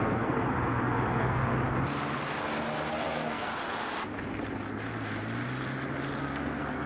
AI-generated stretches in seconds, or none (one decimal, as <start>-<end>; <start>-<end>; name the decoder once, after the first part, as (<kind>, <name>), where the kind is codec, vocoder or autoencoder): 0.0-1.5 (codec, SNAC); 2.9-3.5; 6.2-6.9